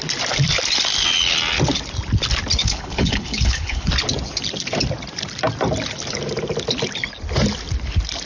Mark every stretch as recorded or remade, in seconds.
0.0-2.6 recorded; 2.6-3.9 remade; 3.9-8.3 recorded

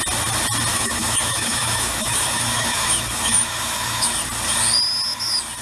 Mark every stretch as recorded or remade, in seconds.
0.0-0.7 recorded; 0.7-4.1 remade; 4.1-5.6 recorded

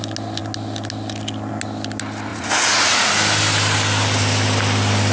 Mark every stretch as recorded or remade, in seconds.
0.0-2.3 recorded; 2.3-3.1 remade; 3.1-5.1 recorded

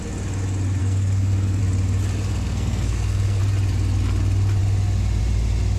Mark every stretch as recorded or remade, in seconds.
0.0-0.8 recorded; 0.8-1.6 remade; 1.6-2.3 recorded; 2.3-3.4 remade; 3.4-5.8 recorded

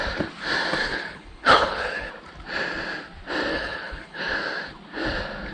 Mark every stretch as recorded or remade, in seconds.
0.0-0.8 recorded; 0.8-2.1 remade; 2.1-3.5 recorded; 3.5-4.2 remade; 4.2-5.5 recorded

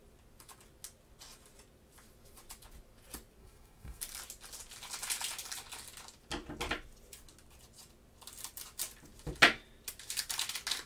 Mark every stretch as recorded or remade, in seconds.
0.0-3.4 recorded; 3.4-4.0 remade; 4.0-10.9 recorded

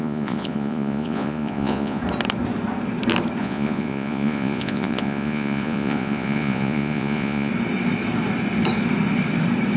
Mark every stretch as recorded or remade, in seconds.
0.0-2.0 remade; 2.0-3.4 recorded; 3.4-7.5 remade; 7.5-9.8 recorded